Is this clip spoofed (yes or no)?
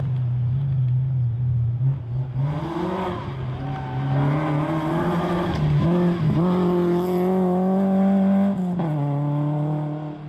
no